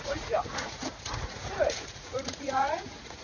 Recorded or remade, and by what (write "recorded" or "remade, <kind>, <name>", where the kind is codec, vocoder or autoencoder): remade, vocoder, Vocos